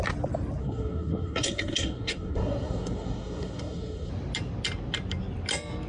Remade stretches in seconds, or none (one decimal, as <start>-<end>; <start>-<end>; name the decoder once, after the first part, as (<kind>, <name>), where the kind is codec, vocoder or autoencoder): 0.6-4.1 (codec, SNAC)